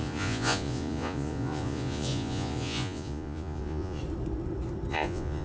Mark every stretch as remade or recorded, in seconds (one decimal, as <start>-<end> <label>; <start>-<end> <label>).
0.0-4.0 remade; 4.0-4.9 recorded; 4.9-5.4 remade